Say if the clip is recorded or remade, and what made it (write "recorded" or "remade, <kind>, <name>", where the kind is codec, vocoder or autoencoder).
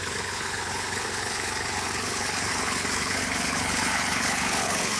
remade, codec, HILCodec